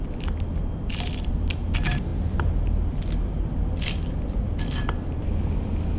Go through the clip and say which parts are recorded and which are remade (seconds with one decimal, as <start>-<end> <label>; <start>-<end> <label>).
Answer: 0.0-6.0 recorded